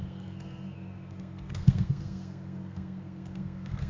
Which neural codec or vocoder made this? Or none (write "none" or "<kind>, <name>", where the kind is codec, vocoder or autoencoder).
codec, SNAC